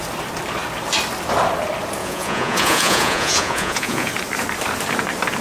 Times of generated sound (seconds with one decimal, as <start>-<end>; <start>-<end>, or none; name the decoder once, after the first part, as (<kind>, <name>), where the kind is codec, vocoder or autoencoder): 2.0-4.1 (vocoder, Vocos)